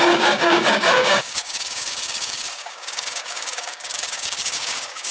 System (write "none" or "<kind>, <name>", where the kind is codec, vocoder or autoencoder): codec, DAC